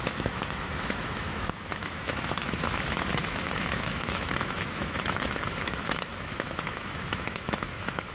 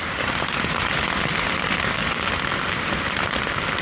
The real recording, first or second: second